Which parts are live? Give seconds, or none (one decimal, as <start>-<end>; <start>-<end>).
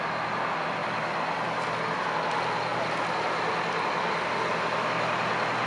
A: 0.0-5.7